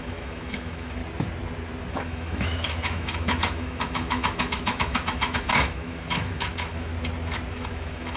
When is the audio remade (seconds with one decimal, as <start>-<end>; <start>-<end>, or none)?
0.0-1.0; 1.9-6.9; 7.5-8.2